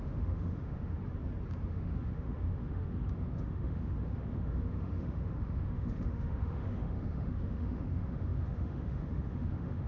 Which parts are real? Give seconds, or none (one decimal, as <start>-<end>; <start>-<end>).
1.0-1.7